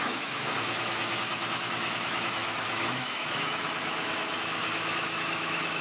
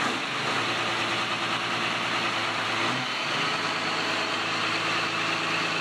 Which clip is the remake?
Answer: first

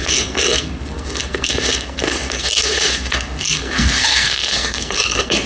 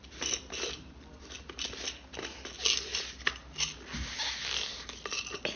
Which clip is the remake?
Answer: first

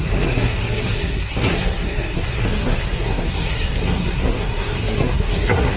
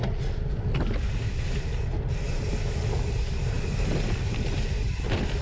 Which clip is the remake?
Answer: first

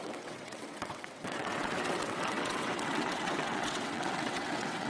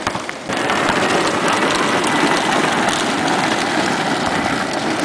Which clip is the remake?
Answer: first